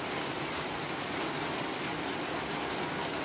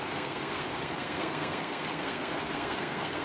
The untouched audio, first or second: first